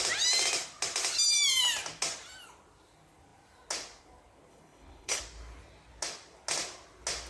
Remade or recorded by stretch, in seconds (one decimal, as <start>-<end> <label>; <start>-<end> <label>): 0.0-4.5 recorded; 4.5-5.2 remade; 5.2-7.3 recorded